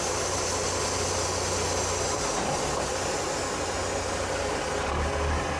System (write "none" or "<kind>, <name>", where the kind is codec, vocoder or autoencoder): none